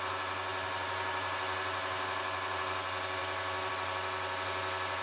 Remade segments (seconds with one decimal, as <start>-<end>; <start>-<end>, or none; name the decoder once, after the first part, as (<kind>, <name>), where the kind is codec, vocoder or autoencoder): none